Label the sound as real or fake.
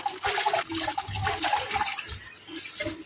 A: real